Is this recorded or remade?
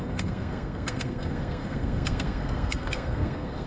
remade